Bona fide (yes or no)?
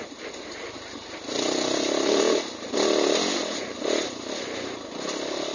yes